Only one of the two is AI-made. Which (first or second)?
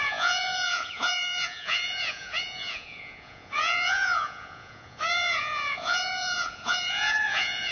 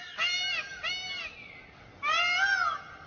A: first